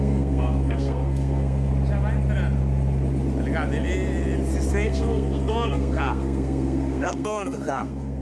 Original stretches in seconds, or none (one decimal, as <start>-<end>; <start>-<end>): 1.7-4.7